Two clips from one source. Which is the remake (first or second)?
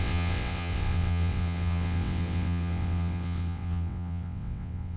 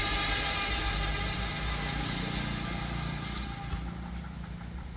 first